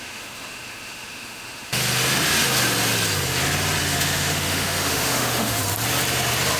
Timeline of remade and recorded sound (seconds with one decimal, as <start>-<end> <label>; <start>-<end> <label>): 0.0-1.8 remade; 1.8-3.8 recorded; 3.8-5.6 remade; 5.6-6.6 recorded